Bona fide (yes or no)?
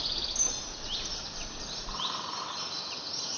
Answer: yes